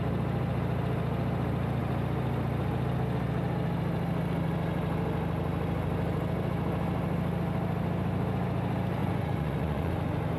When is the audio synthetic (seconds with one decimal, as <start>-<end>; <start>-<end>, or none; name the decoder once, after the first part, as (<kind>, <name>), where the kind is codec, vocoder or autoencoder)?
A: 9.0-9.9 (vocoder, Vocos)